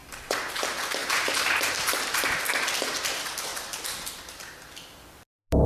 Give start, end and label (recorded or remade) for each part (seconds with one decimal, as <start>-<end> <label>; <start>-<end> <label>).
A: 0.0-0.6 remade; 0.6-1.0 recorded; 1.0-2.4 remade; 2.4-3.5 recorded; 3.5-4.2 remade; 4.2-5.7 recorded

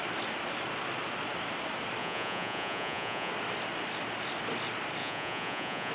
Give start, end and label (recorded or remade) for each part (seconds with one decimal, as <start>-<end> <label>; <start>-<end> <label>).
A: 0.0-2.0 recorded; 2.0-3.3 remade; 3.3-5.0 recorded; 5.0-5.9 remade

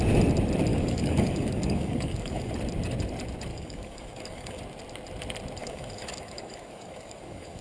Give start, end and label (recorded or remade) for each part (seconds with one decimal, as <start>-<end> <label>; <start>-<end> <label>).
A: 0.0-0.7 recorded; 0.7-2.5 remade; 2.5-3.5 recorded; 3.5-4.6 remade; 4.6-5.6 recorded; 5.6-7.6 remade

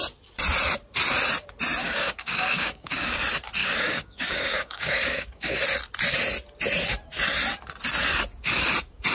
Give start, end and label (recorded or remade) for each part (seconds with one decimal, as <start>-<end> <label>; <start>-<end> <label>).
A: 0.0-1.8 recorded; 1.8-3.2 remade; 3.2-3.6 recorded; 3.6-5.6 remade; 5.6-9.1 recorded

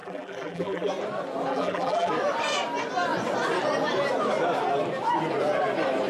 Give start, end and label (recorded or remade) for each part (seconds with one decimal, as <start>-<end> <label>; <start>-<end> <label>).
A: 0.0-0.9 remade; 0.9-1.5 recorded; 1.5-2.1 remade; 2.1-6.1 recorded

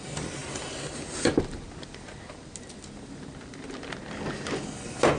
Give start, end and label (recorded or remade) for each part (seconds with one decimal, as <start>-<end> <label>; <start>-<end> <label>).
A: 0.0-5.2 recorded

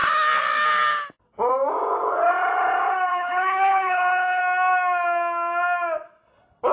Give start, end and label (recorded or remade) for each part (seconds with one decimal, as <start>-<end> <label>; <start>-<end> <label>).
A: 0.0-3.1 recorded; 3.1-4.4 remade; 4.4-6.7 recorded